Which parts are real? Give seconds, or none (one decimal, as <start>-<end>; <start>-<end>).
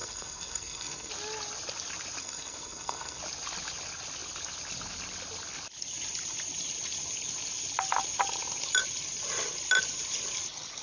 1.1-2.2; 3.2-10.8